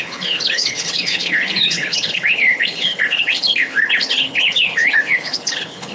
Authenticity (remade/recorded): remade